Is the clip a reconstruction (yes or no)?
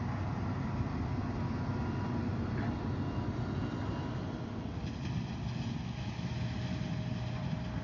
no